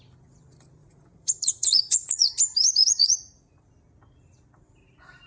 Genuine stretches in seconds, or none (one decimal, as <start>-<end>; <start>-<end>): 0.0-0.8; 2.3-2.8; 3.6-5.3